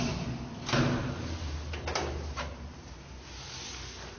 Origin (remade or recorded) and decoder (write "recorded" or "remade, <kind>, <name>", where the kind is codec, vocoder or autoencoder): recorded